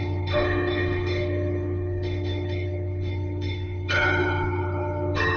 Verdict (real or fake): fake